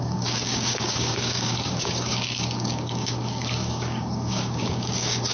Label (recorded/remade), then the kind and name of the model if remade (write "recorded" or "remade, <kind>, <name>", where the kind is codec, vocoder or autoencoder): remade, codec, DAC